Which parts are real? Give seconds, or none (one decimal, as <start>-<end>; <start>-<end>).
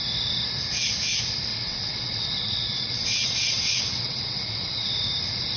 0.0-1.5; 4.9-5.6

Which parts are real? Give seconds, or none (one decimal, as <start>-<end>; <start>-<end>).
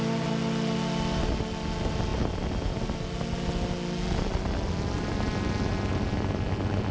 0.0-6.9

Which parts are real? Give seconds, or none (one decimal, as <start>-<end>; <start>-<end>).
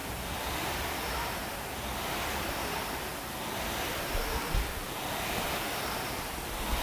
none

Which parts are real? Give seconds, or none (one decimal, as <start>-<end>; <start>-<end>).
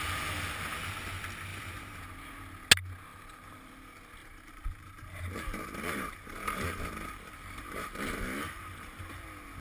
0.0-1.5; 2.0-3.1; 3.7-4.2; 9.0-9.6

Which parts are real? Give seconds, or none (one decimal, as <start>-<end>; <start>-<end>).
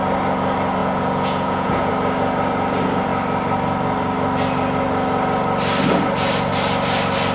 0.0-0.8; 1.9-7.3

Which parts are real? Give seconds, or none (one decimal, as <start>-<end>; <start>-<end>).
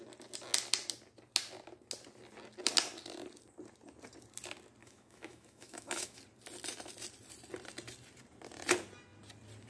0.0-4.8; 6.2-9.7